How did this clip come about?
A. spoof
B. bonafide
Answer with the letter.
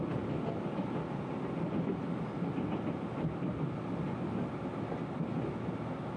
B